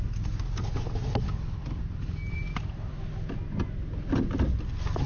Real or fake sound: real